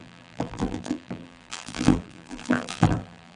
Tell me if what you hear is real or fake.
fake